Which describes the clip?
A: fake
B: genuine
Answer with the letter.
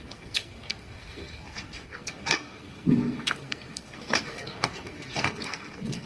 A